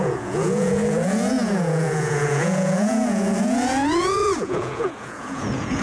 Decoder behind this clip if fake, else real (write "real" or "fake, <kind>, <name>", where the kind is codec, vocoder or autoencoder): fake, vocoder, Vocos